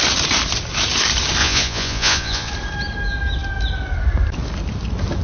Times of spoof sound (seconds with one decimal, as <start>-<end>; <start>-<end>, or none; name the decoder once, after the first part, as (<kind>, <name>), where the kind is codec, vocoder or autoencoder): 1.4-2.5 (vocoder, Vocos)

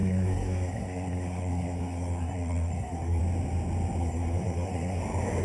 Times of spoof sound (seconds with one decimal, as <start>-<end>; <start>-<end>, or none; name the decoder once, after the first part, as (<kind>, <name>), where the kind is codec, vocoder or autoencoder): 0.0-3.2 (codec, SNAC); 4.0-5.0

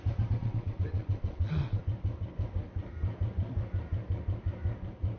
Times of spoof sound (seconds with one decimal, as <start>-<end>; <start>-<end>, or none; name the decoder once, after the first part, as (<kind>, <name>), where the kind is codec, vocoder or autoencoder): 0.4-1.8 (vocoder, WaveNeXt)

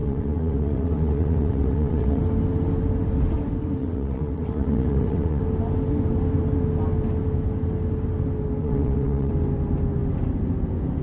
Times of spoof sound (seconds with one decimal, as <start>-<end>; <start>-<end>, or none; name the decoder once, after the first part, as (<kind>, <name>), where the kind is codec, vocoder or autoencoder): 0.0-2.2 (vocoder, WaveNeXt); 3.8-5.4; 8.6-9.3

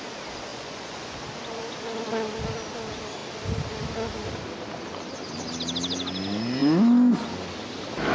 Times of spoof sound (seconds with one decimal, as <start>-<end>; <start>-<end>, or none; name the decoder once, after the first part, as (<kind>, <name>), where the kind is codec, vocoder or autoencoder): 0.5-1.2 (vocoder, Vocos)

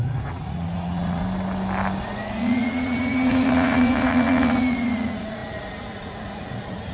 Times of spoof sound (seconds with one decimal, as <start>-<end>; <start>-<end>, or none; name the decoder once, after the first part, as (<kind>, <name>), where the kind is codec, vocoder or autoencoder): 0.0-1.2 (vocoder, Vocos); 2.0-6.9